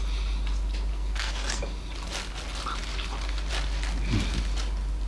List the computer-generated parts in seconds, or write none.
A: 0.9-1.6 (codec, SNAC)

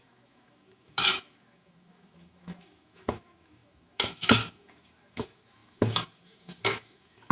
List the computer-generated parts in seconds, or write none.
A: 0.0-7.3 (autoencoder, DAC-VAE)

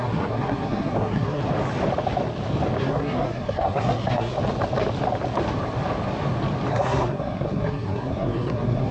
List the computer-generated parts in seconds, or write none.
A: 0.0-1.4 (codec, SNAC); 2.8-4.4; 6.7-8.9

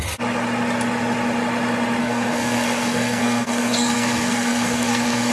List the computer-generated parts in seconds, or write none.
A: 2.0-5.3 (codec, SNAC)

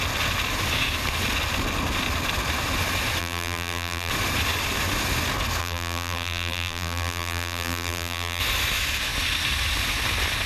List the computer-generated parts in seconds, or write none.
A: 3.2-4.1 (vocoder, BigVGAN v2); 5.6-8.4

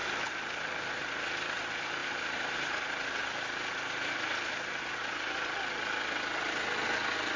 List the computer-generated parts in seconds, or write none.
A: 0.0-0.6 (vocoder, BigVGAN v2); 2.0-2.8